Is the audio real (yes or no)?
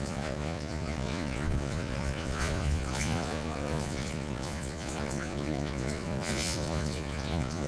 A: no